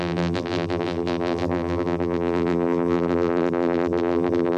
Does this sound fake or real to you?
fake